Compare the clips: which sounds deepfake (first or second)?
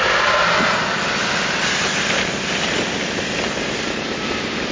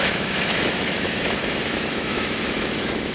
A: second